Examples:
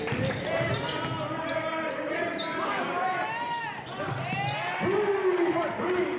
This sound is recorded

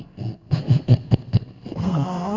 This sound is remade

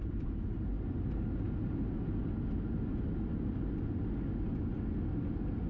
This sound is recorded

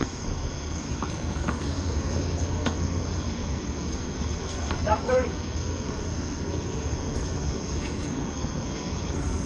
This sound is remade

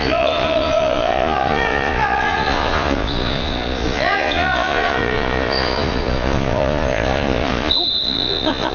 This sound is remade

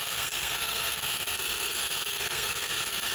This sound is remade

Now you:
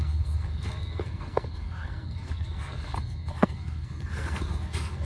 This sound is remade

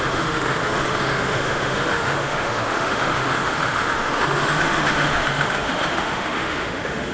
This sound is remade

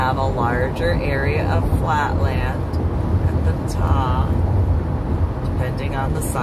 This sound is recorded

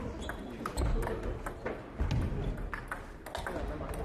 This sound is recorded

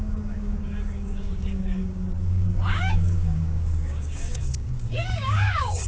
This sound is remade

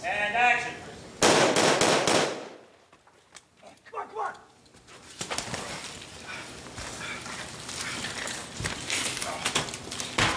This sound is recorded